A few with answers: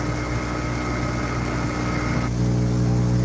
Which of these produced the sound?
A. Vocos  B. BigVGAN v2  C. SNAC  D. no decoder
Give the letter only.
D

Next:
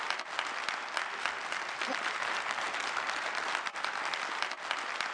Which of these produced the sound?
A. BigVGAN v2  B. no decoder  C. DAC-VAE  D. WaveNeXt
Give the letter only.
B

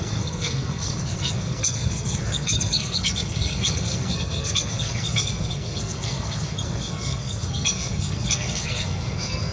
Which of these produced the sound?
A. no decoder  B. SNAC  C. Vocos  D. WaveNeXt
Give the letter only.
B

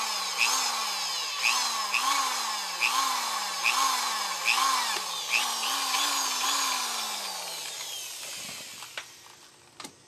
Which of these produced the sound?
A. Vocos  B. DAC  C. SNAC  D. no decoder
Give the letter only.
D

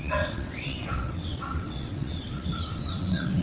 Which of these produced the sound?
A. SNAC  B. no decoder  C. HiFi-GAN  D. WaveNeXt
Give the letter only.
D